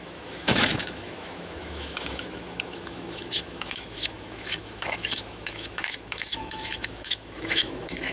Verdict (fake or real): fake